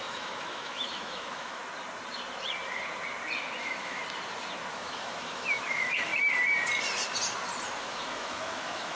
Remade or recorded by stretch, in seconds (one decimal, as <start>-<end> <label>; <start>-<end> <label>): 0.0-1.6 remade; 1.6-3.6 recorded; 3.6-4.0 remade; 4.0-4.7 recorded; 4.7-6.1 remade; 6.1-7.8 recorded; 7.8-9.0 remade